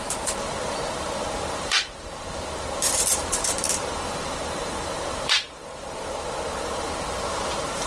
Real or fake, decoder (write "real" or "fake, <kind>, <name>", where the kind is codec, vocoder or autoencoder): fake, vocoder, BigVGAN v2